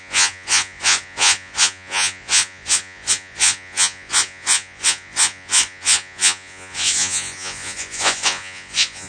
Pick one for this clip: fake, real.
fake